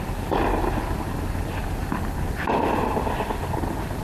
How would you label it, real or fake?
real